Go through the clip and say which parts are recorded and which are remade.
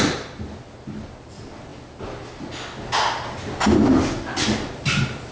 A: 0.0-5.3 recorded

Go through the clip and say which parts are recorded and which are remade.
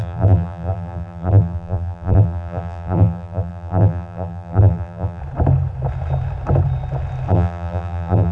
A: 0.0-5.2 remade; 5.2-7.3 recorded; 7.3-8.3 remade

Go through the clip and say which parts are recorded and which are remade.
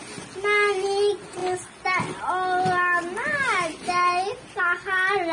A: 0.0-5.3 recorded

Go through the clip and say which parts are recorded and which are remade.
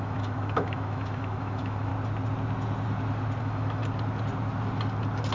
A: 0.0-1.9 remade; 1.9-3.4 recorded; 3.4-3.8 remade; 3.8-5.3 recorded